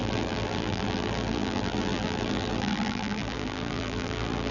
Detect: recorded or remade remade